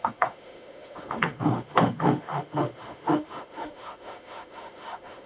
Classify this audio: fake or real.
fake